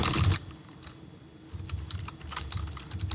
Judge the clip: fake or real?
real